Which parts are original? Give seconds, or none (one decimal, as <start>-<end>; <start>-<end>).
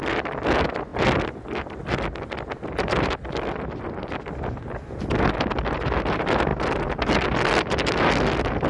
0.0-8.7